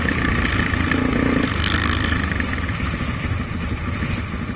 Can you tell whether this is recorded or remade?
recorded